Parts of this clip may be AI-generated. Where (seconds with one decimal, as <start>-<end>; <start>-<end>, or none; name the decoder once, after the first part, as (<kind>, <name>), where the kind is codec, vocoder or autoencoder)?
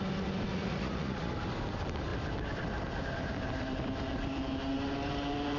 0.5-1.3 (vocoder, Vocos)